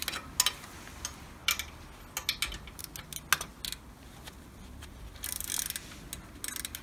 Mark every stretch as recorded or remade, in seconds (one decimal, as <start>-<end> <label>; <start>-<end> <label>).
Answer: 0.0-6.8 recorded